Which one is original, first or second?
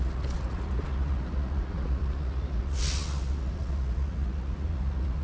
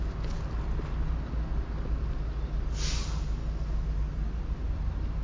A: second